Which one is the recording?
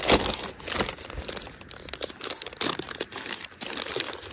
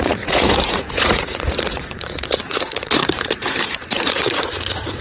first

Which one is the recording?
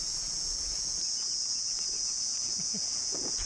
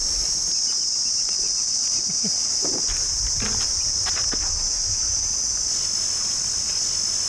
second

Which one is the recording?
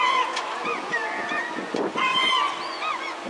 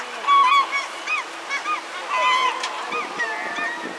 second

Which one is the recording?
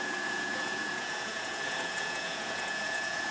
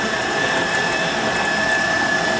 second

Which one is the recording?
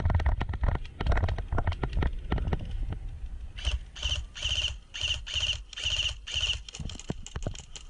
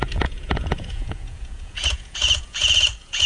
first